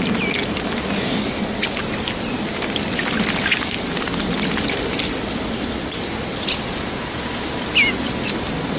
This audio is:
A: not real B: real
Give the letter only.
B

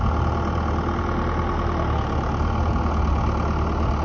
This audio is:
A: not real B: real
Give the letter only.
B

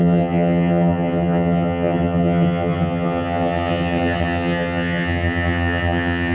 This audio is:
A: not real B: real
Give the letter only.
A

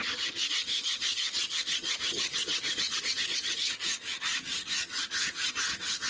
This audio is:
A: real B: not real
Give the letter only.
B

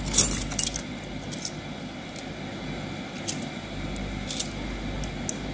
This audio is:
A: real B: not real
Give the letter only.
A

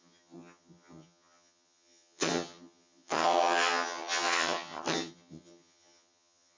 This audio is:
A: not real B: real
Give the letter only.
A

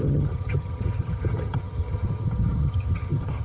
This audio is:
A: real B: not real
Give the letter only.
B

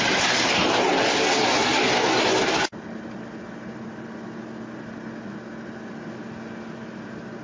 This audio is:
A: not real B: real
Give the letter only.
B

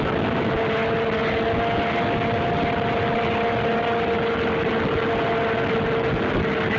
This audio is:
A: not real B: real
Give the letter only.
B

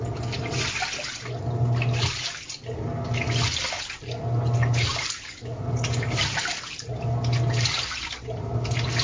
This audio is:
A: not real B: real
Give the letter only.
B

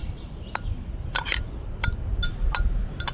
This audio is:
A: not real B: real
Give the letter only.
B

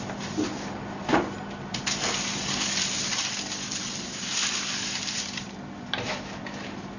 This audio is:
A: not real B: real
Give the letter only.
B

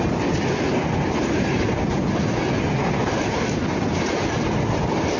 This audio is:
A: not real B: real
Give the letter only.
B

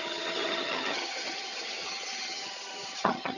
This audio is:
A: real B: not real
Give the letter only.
B